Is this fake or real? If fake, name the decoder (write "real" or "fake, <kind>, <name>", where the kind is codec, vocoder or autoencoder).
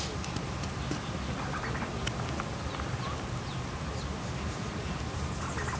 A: real